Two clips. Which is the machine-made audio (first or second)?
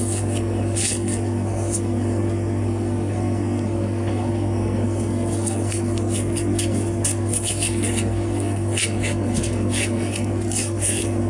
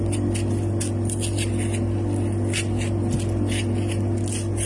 first